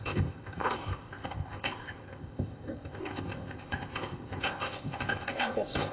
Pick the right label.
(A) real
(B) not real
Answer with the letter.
B